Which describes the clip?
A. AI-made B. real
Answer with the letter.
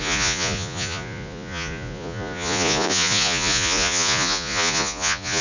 A